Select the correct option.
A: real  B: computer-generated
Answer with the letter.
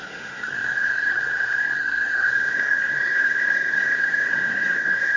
B